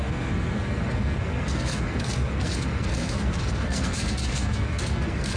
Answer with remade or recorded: remade